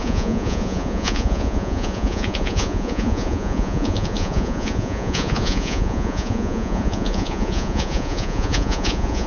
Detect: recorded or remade remade